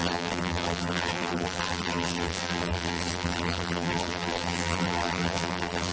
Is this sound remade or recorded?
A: remade